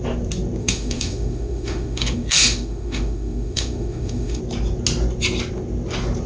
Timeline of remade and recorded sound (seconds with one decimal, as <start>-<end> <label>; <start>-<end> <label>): 0.0-0.6 recorded; 0.6-4.4 remade; 4.4-6.3 recorded

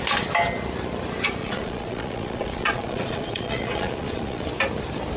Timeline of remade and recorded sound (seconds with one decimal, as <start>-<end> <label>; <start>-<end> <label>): 0.0-1.4 recorded; 1.4-4.5 remade; 4.5-5.2 recorded